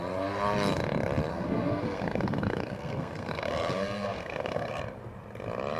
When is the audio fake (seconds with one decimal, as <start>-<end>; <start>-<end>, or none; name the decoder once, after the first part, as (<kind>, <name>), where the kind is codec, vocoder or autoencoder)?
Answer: 1.3-4.8 (codec, SNAC)

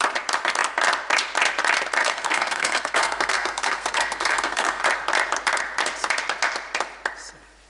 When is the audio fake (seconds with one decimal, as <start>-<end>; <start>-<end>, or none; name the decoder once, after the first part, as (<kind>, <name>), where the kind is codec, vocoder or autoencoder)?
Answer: 2.0-4.8 (codec, SNAC)

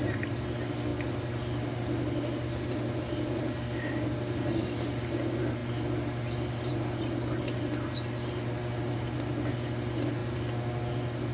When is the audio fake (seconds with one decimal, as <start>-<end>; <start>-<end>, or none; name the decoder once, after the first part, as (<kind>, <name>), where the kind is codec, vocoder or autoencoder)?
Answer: none

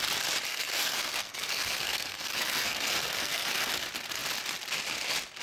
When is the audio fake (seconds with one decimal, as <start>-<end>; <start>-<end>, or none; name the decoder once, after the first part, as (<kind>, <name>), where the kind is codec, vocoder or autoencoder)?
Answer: 0.5-3.7 (codec, SNAC)

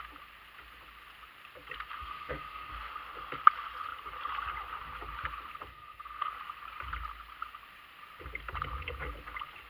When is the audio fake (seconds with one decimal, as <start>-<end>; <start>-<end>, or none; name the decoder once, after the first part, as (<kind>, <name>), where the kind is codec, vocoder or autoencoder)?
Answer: 2.0-2.7 (codec, SNAC); 5.7-6.3